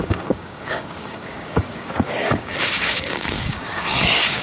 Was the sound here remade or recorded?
remade